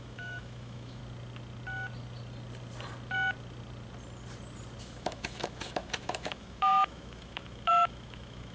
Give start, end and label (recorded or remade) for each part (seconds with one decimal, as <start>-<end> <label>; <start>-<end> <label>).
0.0-1.0 remade; 1.0-4.8 recorded; 4.8-8.5 remade